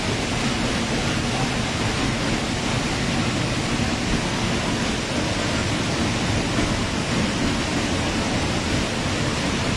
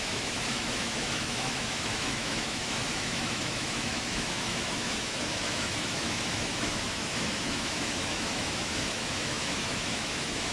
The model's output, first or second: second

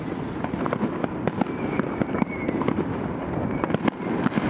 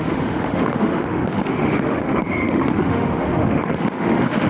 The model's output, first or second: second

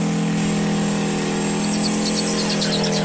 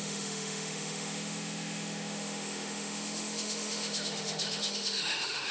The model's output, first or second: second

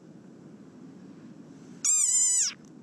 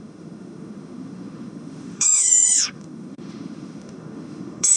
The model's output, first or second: second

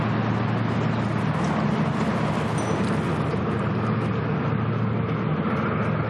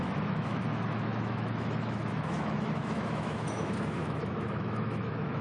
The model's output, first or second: second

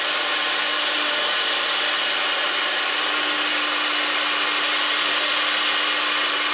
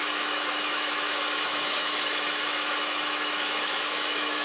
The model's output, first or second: second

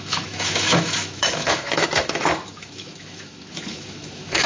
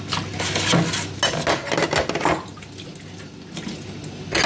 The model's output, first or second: first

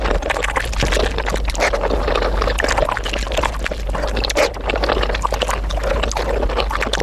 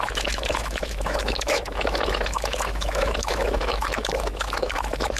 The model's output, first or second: second